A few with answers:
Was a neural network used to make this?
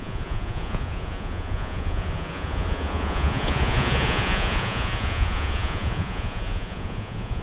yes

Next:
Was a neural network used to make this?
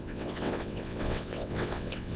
yes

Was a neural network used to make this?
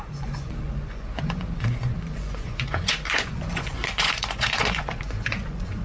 yes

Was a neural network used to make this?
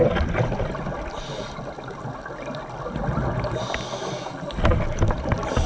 no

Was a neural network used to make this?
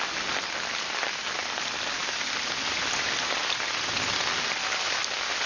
no